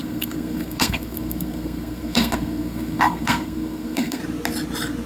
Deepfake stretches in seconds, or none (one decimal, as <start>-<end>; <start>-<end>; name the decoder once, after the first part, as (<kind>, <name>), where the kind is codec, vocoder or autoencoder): 0.0-4.2 (codec, SNAC)